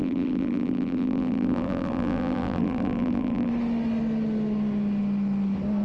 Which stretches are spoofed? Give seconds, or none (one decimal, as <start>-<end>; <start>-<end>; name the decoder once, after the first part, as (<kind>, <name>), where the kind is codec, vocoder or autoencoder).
0.0-3.5 (vocoder, BigVGAN v2)